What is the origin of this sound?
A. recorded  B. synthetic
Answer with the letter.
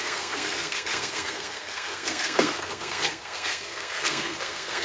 B